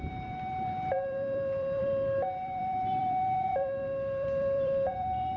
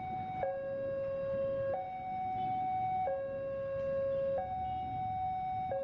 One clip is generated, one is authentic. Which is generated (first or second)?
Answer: first